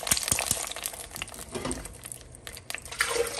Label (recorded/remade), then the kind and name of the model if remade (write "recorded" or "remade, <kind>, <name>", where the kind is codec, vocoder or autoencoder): recorded